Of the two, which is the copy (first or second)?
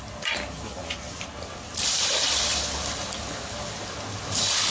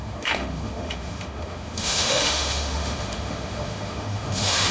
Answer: second